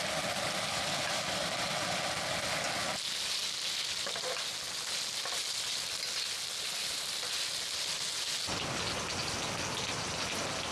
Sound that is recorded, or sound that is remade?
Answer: recorded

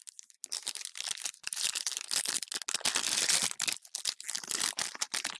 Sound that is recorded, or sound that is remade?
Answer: recorded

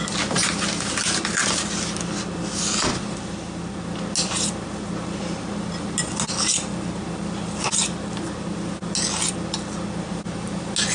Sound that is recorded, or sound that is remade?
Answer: recorded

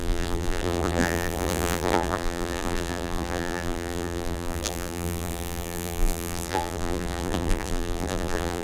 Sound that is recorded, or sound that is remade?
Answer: remade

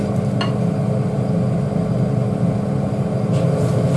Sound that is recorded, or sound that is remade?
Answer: recorded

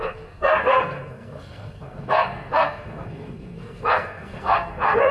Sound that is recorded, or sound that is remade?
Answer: remade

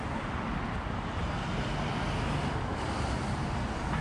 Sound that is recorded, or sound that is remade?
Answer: recorded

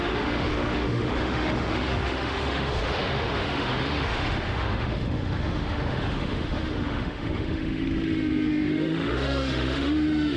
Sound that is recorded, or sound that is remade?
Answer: remade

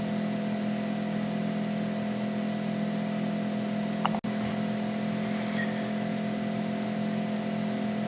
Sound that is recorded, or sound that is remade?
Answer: recorded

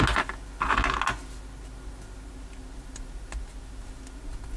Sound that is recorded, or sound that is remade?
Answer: recorded